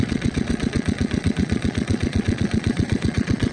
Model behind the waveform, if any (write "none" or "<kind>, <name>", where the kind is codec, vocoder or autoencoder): vocoder, Vocos